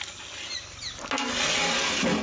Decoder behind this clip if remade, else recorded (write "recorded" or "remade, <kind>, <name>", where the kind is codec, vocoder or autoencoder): recorded